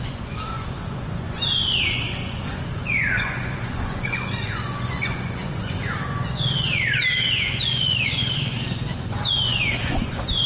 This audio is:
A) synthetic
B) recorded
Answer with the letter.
A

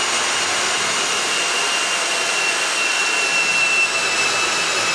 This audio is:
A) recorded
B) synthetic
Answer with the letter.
A